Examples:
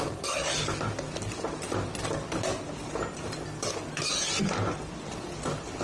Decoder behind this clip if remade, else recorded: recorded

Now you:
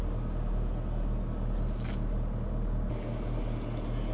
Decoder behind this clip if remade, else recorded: recorded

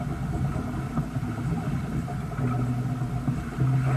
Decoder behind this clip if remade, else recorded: recorded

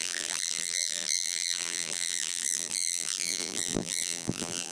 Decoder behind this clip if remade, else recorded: remade, vocoder, BigVGAN v2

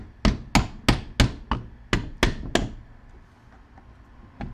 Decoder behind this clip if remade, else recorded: recorded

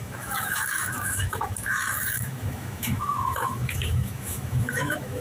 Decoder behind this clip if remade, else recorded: remade, autoencoder, DAC-VAE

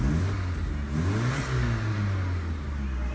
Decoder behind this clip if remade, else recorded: recorded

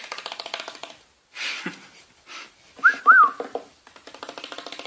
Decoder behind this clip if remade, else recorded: remade, vocoder, BigVGAN v2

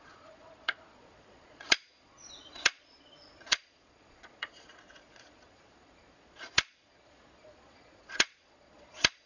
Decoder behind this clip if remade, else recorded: remade, vocoder, Vocos